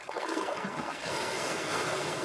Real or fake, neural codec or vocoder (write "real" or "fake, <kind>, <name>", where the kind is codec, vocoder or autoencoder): fake, codec, SNAC